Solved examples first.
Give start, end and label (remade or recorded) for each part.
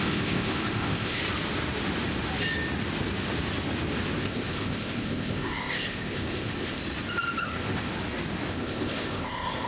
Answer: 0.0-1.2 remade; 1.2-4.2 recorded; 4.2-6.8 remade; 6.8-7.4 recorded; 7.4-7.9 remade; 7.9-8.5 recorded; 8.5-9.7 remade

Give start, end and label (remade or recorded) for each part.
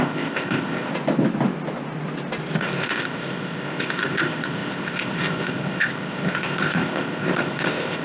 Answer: 0.0-0.9 remade; 0.9-2.6 recorded; 2.6-8.0 remade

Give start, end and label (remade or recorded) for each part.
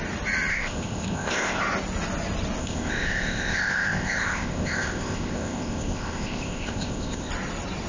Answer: 0.0-0.5 recorded; 0.5-1.6 remade; 1.6-2.6 recorded; 2.6-7.3 remade; 7.3-7.9 recorded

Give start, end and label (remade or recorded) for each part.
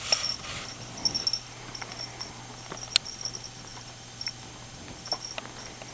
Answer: 0.0-5.9 recorded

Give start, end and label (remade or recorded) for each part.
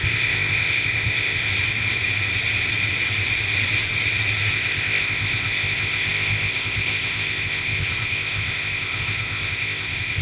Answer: 0.0-1.5 remade; 1.5-4.5 recorded; 4.5-10.2 remade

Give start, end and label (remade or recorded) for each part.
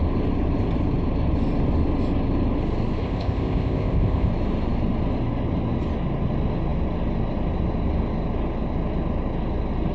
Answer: 0.0-3.0 recorded; 3.0-4.3 remade; 4.3-9.9 recorded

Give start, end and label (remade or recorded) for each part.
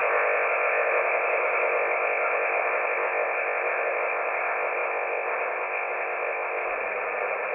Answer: 0.0-6.7 remade; 6.7-7.5 recorded